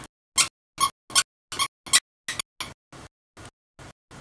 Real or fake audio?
real